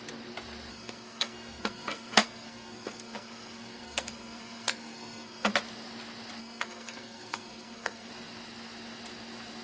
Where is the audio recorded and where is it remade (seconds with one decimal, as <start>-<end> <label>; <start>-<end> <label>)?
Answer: 0.0-0.7 recorded; 0.7-5.5 remade; 5.5-6.4 recorded; 6.4-8.1 remade; 8.1-9.6 recorded

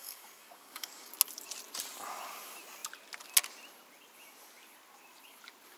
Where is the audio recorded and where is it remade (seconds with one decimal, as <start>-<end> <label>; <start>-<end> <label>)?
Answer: 0.0-1.1 remade; 1.1-5.8 recorded

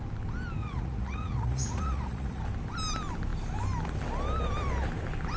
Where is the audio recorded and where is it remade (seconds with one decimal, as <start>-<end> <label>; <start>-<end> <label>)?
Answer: 0.0-0.6 recorded; 0.6-2.4 remade; 2.4-5.4 recorded

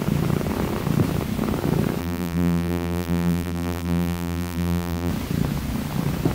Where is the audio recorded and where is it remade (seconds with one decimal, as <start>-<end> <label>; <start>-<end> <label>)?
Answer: 0.0-2.0 recorded; 2.0-5.1 remade; 5.1-6.3 recorded

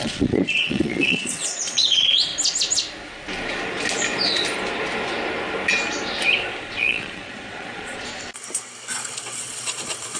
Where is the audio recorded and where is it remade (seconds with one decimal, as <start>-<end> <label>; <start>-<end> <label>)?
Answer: 0.0-2.3 remade; 2.3-6.6 recorded; 6.6-8.1 remade; 8.1-8.9 recorded; 8.9-10.2 remade